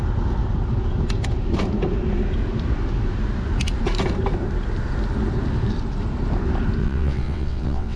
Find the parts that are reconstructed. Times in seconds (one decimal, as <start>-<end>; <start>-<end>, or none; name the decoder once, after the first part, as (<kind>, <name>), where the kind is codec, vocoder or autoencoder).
6.8-8.0 (vocoder, WaveNeXt)